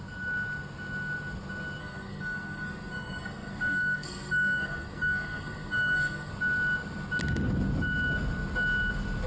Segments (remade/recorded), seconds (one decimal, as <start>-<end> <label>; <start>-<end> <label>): 0.0-1.8 recorded; 1.8-6.3 remade; 6.3-9.3 recorded